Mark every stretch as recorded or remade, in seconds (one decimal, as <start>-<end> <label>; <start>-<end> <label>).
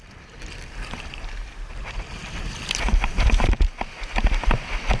0.0-5.0 recorded